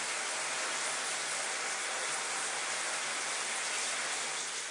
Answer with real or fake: real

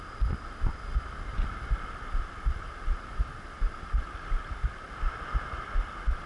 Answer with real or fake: real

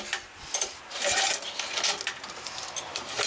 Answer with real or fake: real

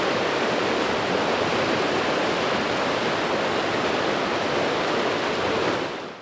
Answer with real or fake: real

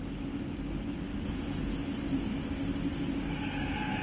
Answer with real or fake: real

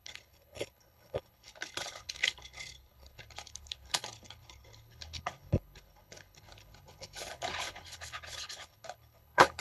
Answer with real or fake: fake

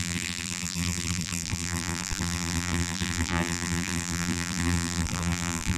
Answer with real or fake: fake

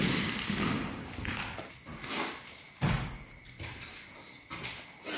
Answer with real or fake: real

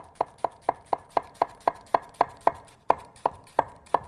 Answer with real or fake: fake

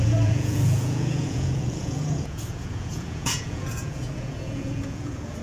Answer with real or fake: fake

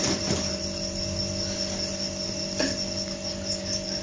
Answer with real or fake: fake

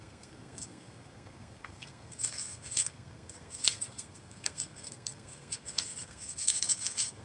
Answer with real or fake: fake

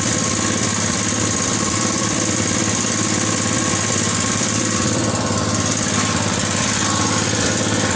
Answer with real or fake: fake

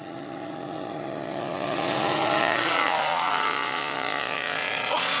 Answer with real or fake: fake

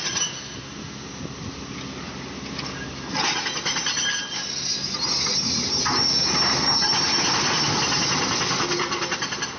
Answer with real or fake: real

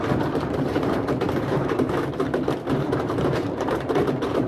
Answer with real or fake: fake